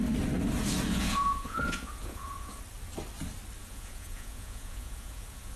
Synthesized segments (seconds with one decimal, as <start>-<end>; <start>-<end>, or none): 0.9-2.6; 3.6-5.6